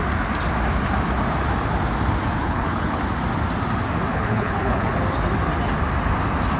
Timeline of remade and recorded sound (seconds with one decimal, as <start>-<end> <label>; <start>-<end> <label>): 0.0-2.4 recorded; 2.4-3.0 remade; 3.0-4.1 recorded; 4.1-4.9 remade; 4.9-6.6 recorded